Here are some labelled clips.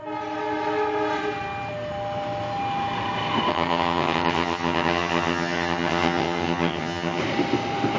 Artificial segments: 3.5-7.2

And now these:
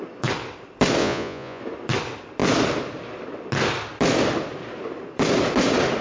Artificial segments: 1.0-1.6

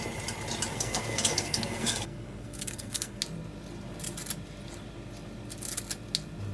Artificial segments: 0.7-3.2

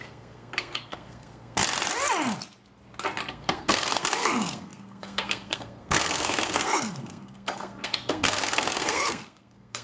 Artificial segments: 0.0-1.6; 3.3-9.8

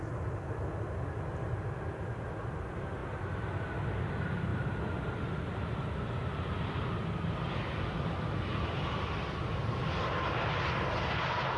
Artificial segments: 3.0-3.6; 4.5-5.8

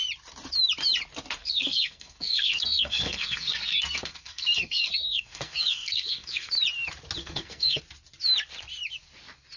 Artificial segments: 1.4-6.5; 7.2-7.8